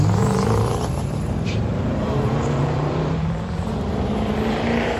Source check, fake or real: fake